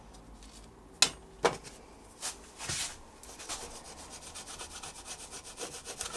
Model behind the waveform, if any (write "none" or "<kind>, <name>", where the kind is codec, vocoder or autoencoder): none